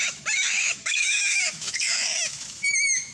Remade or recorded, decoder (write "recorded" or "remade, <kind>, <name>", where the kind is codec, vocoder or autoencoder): remade, autoencoder, DAC-VAE